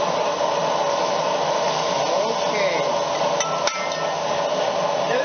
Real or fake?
real